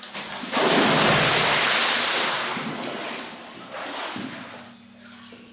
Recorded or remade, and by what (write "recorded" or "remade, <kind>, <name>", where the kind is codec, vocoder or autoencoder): recorded